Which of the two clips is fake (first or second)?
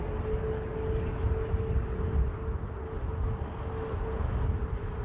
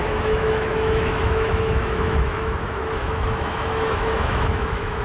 second